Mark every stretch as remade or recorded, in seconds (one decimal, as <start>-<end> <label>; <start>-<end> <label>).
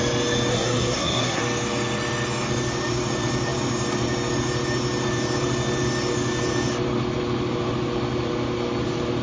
0.0-0.5 recorded; 0.5-1.4 remade; 1.4-9.2 recorded